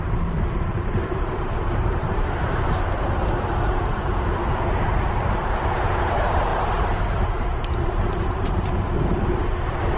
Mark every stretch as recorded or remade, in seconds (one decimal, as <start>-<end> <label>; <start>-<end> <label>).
0.0-2.8 remade; 2.8-5.1 recorded; 5.1-10.0 remade